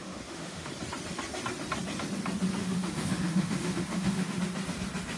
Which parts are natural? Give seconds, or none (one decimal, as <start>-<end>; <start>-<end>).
0.7-2.6; 4.4-5.2